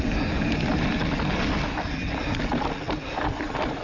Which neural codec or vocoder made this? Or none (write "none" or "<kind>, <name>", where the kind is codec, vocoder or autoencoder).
none